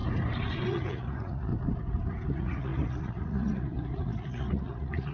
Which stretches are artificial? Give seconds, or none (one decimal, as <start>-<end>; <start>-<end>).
0.7-1.5; 2.3-5.1